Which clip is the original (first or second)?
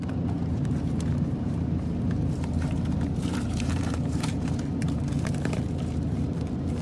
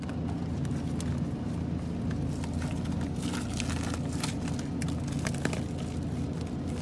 second